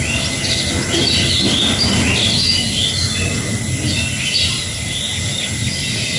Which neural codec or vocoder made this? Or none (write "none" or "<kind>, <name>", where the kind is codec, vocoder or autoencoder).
none